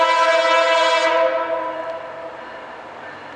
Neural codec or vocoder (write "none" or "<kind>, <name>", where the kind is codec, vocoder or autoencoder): none